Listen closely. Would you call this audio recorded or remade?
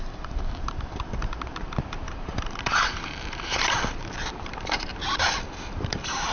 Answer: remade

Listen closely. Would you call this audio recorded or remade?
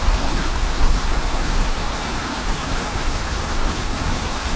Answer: remade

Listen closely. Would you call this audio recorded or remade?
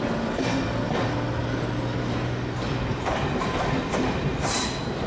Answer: recorded